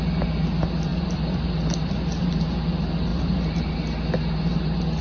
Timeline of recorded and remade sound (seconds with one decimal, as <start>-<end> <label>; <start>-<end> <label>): 0.0-0.9 recorded; 0.9-2.3 remade; 2.3-3.1 recorded; 3.1-3.6 remade; 3.6-5.0 recorded